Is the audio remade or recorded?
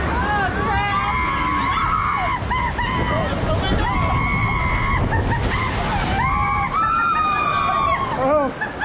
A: recorded